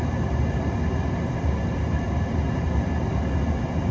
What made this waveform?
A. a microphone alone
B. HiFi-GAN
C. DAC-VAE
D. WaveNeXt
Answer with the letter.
A